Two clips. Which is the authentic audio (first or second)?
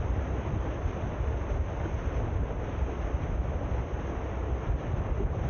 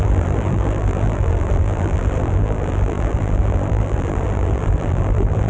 first